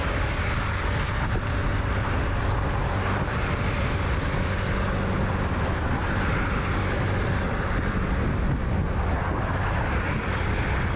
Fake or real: real